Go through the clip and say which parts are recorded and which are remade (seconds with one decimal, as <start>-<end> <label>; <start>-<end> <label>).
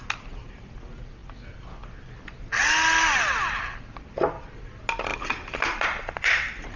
0.0-5.1 recorded; 5.1-6.8 remade